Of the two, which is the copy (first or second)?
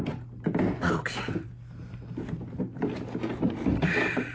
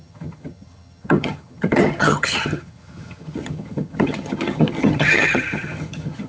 second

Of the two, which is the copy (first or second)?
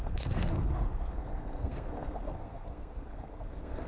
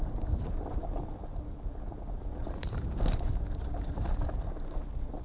first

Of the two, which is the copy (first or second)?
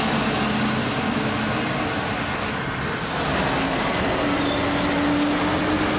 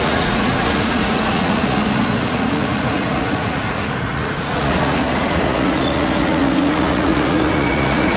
second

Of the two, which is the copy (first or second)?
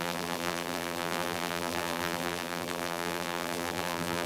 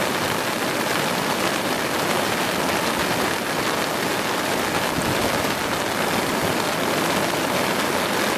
first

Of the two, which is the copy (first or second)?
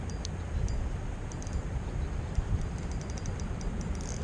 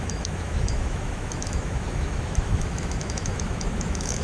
second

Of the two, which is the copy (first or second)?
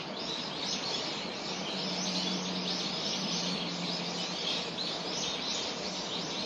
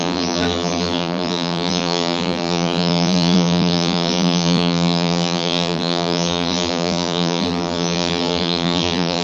second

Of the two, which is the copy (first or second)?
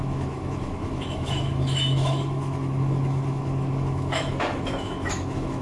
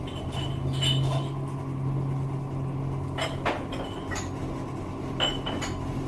first